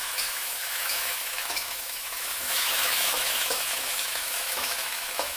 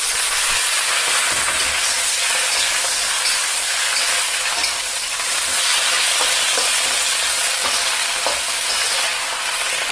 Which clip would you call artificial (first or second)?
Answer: first